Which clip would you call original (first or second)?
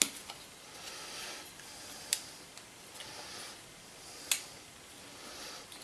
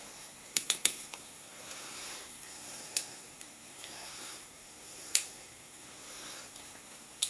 first